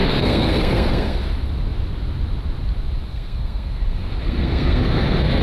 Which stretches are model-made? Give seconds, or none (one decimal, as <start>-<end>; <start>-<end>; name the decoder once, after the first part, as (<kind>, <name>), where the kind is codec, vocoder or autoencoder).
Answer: 0.0-1.2 (codec, SNAC); 3.1-5.4